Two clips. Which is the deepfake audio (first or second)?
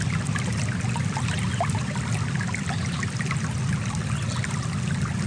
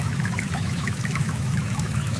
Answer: second